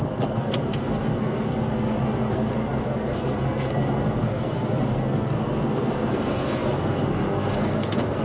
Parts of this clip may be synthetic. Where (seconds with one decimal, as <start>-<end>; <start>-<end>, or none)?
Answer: 0.0-8.2

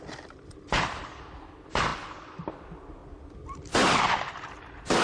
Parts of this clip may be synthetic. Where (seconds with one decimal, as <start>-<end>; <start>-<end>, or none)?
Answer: none